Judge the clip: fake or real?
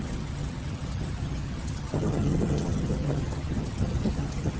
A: fake